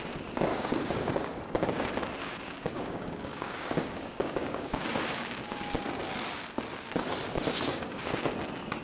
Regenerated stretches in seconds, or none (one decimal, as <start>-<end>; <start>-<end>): 0.5-1.4; 2.2-5.6; 7.5-8.1